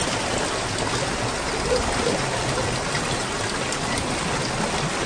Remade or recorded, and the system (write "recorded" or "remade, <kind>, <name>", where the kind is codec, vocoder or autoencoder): recorded